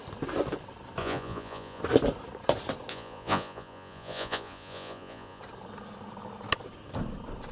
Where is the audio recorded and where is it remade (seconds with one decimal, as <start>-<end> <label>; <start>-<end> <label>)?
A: 0.0-1.0 recorded; 1.0-1.8 remade; 1.8-2.9 recorded; 2.9-5.4 remade; 5.4-7.5 recorded